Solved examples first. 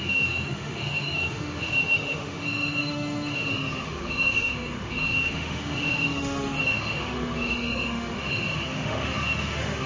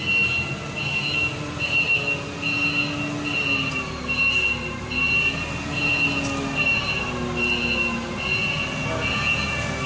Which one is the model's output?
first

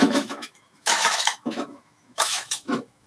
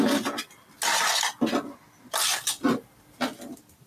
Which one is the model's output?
first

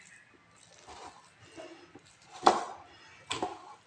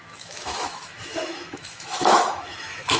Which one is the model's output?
second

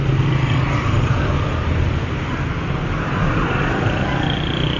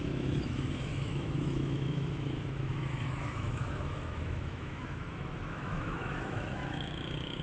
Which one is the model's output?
second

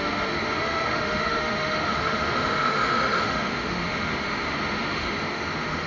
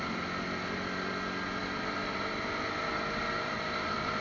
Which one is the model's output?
first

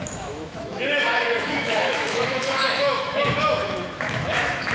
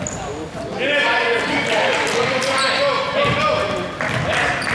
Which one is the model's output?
first